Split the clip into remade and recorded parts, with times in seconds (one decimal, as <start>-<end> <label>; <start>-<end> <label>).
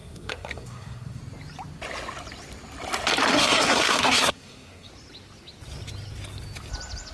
0.0-1.2 remade; 1.2-3.3 recorded; 3.3-4.9 remade; 4.9-7.1 recorded